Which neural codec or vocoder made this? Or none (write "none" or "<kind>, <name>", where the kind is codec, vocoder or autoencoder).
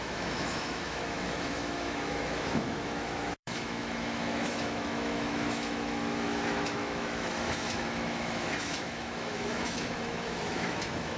autoencoder, DAC-VAE